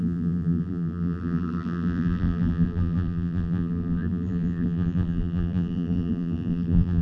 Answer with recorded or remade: remade